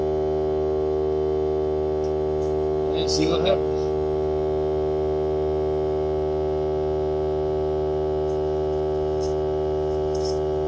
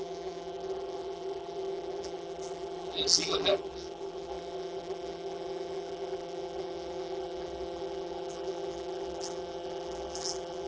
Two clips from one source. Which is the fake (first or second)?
second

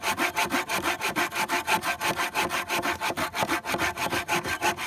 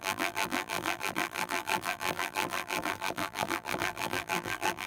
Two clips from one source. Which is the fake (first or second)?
second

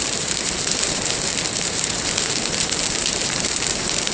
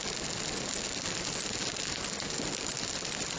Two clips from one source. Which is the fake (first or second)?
first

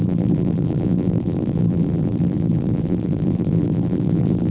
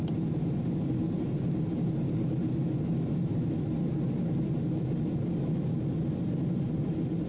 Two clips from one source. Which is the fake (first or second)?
first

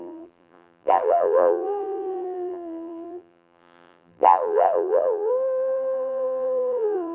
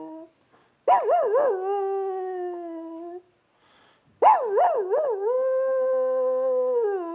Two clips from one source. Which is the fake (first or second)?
first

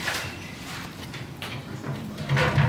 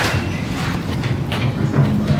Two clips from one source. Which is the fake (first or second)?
first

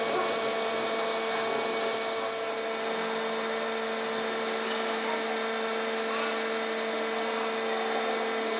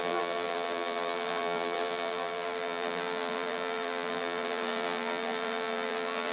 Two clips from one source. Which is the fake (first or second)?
second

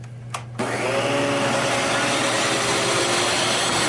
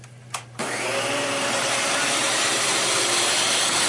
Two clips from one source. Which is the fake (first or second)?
second